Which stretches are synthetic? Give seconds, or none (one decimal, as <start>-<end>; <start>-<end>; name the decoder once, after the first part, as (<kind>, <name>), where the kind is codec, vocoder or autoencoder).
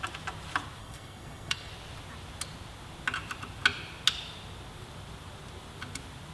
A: 0.8-1.7 (codec, SNAC)